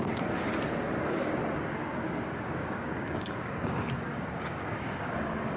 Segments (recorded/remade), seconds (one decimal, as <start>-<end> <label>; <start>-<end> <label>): 0.0-0.5 remade; 0.5-1.0 recorded; 1.0-1.4 remade; 1.4-2.0 recorded; 2.0-5.6 remade